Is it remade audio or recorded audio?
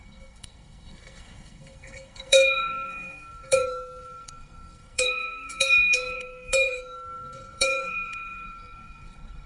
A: remade